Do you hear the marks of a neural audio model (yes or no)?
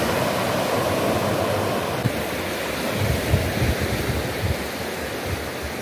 no